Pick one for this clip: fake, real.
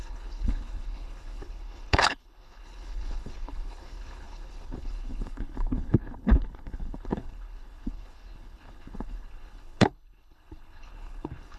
fake